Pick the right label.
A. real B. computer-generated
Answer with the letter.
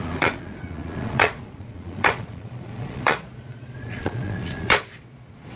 B